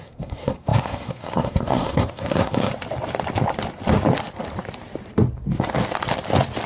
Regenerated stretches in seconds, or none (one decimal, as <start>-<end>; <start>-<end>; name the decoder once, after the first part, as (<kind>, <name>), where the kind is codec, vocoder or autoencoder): 0.0-2.7 (codec, SNAC)